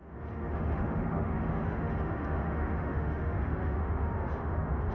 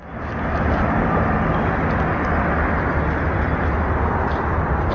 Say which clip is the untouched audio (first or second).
second